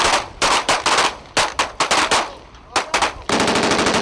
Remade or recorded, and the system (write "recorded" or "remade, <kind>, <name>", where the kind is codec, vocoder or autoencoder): recorded